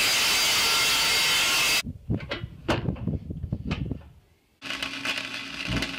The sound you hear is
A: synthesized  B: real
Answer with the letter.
B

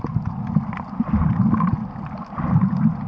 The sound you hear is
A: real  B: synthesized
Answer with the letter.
A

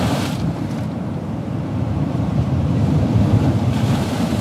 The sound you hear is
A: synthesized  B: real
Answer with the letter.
A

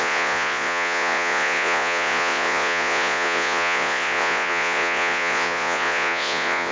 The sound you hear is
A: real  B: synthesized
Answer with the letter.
B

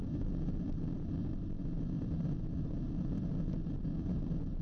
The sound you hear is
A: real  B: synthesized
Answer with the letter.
A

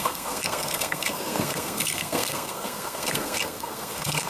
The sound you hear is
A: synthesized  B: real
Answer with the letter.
A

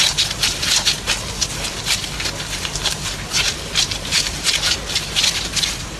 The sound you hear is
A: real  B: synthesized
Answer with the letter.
A